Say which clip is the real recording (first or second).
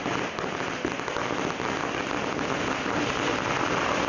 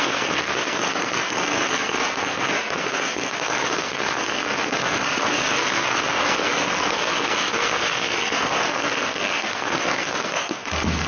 first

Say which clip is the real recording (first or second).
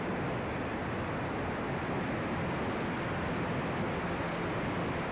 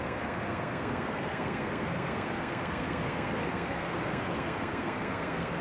first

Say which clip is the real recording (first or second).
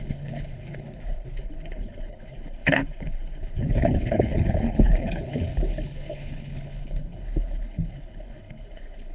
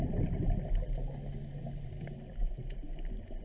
second